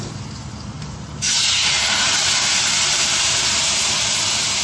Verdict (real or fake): fake